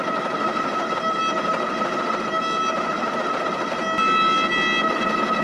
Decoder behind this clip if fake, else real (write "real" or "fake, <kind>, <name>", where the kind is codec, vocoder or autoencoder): real